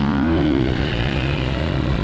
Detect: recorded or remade remade